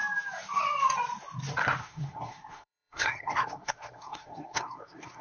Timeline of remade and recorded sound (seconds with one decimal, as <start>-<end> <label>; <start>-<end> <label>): 0.0-1.8 recorded; 1.8-5.2 remade